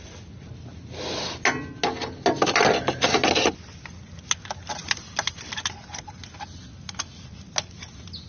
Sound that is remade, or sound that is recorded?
recorded